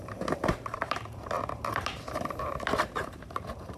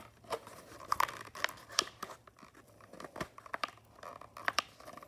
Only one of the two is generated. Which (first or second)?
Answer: first